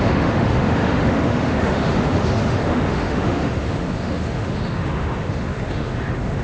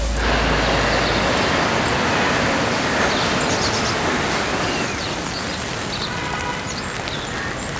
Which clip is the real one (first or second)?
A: second